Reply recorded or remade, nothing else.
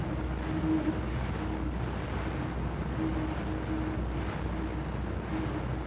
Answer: recorded